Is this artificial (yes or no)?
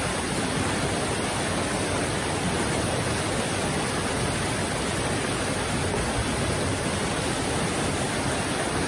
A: no